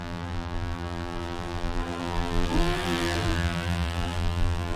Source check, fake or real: fake